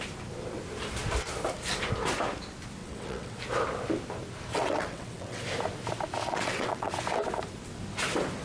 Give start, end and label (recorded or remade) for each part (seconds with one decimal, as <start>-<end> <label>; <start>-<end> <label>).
0.0-2.8 recorded; 2.8-3.4 remade; 3.4-4.5 recorded; 4.5-5.4 remade; 5.4-6.2 recorded; 6.2-6.9 remade; 6.9-8.4 recorded